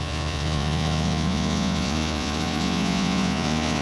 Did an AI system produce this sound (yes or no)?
yes